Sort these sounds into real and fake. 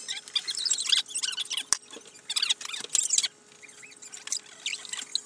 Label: real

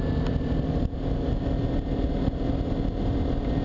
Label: real